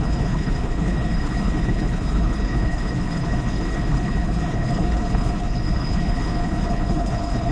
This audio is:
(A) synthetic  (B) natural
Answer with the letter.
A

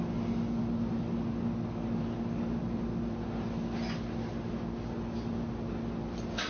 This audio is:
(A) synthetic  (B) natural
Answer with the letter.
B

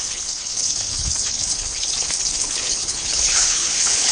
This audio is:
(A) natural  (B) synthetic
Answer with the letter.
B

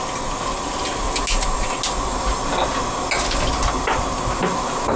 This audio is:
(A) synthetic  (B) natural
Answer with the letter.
B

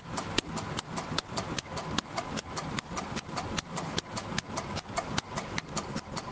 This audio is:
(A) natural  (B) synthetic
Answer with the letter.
A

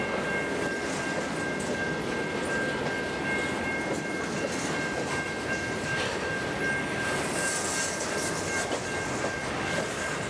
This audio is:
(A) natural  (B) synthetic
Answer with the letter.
A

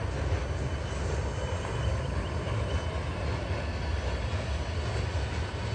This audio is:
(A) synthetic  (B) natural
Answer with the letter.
B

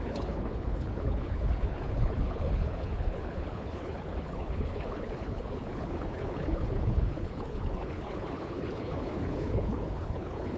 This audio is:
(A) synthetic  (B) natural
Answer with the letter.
A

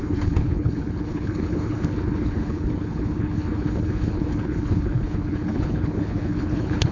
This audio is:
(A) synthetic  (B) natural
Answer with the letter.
A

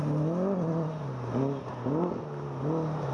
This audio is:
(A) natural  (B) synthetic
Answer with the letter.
A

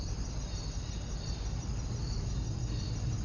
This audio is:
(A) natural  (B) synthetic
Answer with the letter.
A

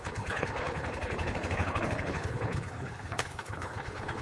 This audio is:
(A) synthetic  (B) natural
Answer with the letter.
A